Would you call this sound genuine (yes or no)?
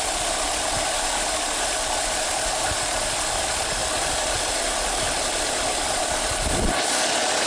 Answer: yes